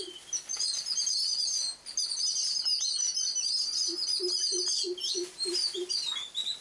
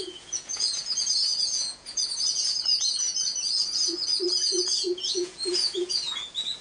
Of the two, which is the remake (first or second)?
second